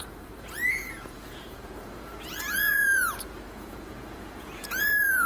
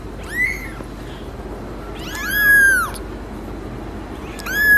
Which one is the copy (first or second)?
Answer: first